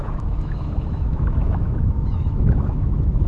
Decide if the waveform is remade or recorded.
remade